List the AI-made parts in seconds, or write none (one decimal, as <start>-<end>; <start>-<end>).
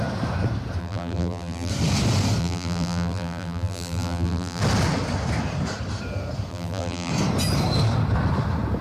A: 0.8-1.7; 2.4-4.6; 6.5-7.1